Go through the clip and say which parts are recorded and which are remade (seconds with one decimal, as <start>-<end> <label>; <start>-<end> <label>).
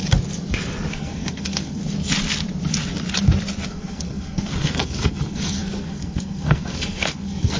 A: 0.0-0.9 recorded; 0.9-1.8 remade; 1.8-3.7 recorded; 3.7-7.6 remade